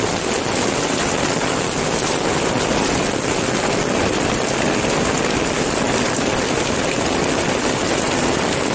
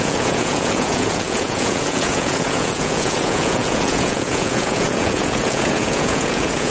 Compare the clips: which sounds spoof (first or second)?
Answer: second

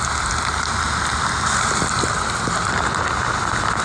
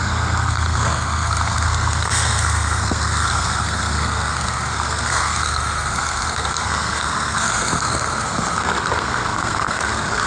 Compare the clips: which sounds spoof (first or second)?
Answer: second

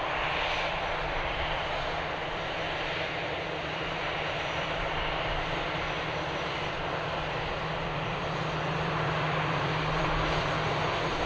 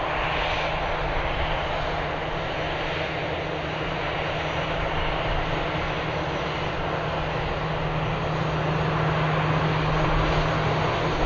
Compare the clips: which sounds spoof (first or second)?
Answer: first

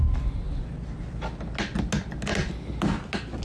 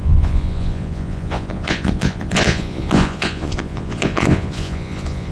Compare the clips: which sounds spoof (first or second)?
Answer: second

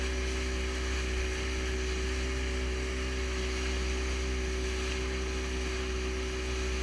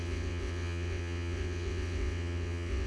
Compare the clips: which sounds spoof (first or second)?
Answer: second